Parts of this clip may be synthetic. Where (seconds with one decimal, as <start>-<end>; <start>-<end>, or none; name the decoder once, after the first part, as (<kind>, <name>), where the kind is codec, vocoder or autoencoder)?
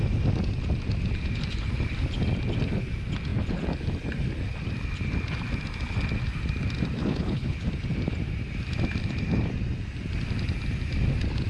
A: 7.0-7.7 (codec, HILCodec)